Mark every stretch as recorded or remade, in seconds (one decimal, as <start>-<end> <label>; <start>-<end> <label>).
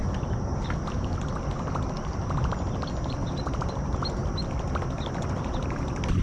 0.0-6.2 recorded